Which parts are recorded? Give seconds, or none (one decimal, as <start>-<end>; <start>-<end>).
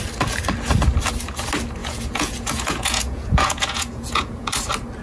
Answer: 0.0-1.8; 4.5-5.0